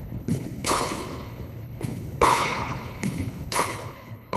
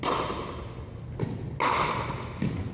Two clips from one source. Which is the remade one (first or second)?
first